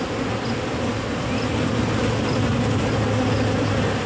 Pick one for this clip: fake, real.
real